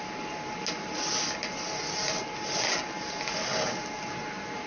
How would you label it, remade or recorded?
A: recorded